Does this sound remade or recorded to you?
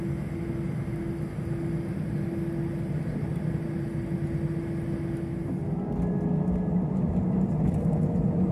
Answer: recorded